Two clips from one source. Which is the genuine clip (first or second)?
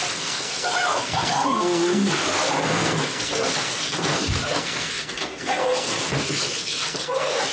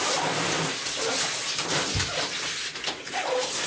second